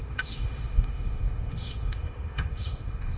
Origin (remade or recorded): remade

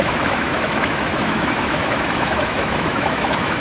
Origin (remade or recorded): remade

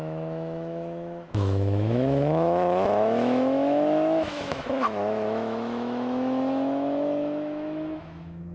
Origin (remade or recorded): remade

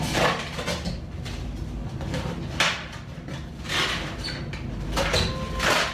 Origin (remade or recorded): recorded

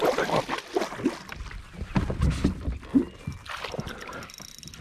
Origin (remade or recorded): recorded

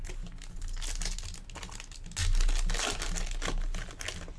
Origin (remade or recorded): recorded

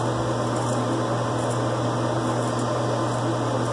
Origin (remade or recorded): recorded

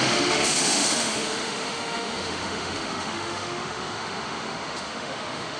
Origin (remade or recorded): remade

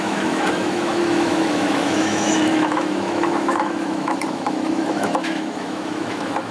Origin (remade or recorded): remade